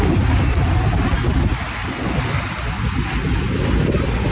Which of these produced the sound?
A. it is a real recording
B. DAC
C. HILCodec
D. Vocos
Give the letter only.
A